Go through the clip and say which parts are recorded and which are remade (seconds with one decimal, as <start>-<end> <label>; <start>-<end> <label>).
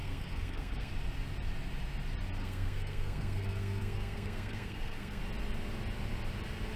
0.0-0.9 remade; 0.9-2.4 recorded; 2.4-5.2 remade; 5.2-6.8 recorded